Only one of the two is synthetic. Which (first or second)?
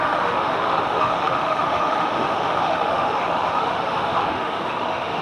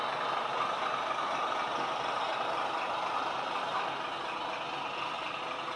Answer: first